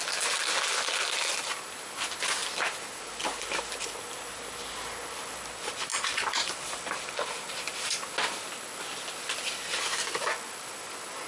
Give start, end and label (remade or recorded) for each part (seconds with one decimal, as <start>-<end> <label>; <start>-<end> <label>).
0.0-11.3 recorded